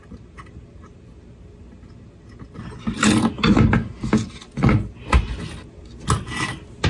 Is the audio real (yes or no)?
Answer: yes